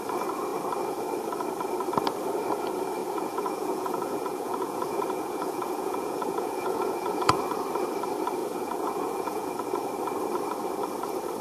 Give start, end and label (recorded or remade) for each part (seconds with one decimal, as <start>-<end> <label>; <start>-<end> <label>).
0.0-3.0 recorded; 3.0-7.4 remade; 7.4-8.4 recorded; 8.4-9.5 remade; 9.5-11.4 recorded